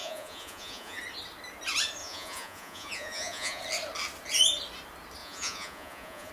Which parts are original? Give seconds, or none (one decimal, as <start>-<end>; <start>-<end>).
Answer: 1.0-2.0; 3.6-5.2